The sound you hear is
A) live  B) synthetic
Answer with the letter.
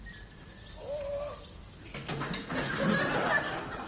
A